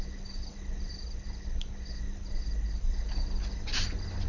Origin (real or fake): real